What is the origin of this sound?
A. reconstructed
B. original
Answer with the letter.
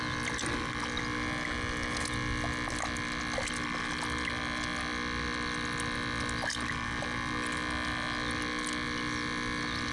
B